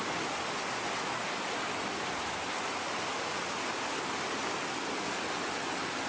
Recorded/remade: recorded